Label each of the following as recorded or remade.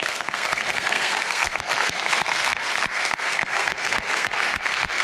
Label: remade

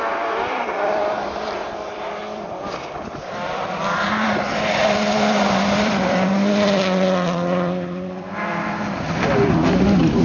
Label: remade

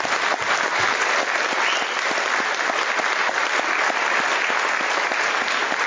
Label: recorded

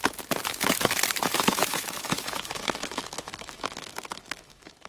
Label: remade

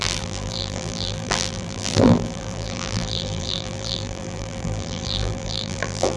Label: remade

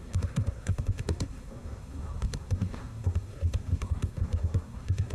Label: remade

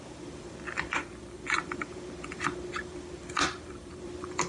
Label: remade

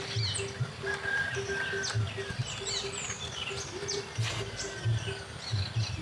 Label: recorded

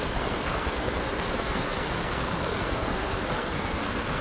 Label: remade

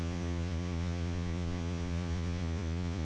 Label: remade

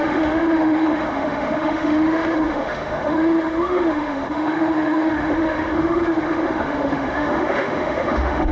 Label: remade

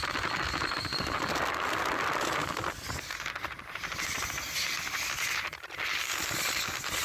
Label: recorded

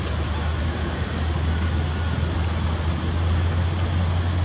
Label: recorded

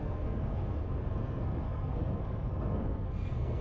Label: remade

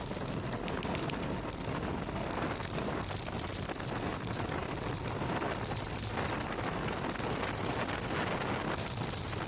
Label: recorded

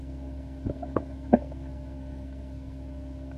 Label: remade